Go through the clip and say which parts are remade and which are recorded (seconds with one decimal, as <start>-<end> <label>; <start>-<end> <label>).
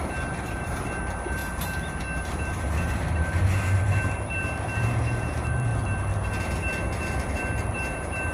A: 0.0-1.4 remade; 1.4-2.2 recorded; 2.2-5.7 remade; 5.7-7.0 recorded; 7.0-8.3 remade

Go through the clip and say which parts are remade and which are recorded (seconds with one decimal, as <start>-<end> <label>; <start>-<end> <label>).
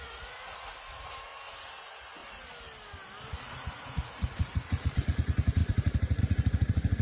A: 0.0-1.3 remade; 1.3-1.8 recorded; 1.8-2.2 remade; 2.2-3.3 recorded; 3.3-7.0 remade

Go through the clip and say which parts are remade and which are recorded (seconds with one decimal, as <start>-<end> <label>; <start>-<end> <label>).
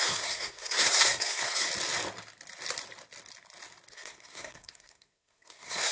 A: 0.0-1.7 remade; 1.7-3.9 recorded; 3.9-5.9 remade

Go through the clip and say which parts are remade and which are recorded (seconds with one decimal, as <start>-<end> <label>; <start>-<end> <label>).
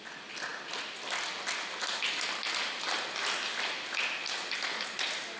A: 0.0-5.4 recorded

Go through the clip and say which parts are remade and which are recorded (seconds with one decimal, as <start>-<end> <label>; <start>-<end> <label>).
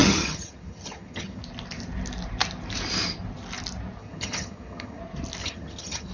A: 0.0-1.4 remade; 1.4-4.0 recorded; 4.0-5.0 remade; 5.0-5.4 recorded; 5.4-6.1 remade